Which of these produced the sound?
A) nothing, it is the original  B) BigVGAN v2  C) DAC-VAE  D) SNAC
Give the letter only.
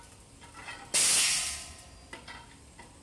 A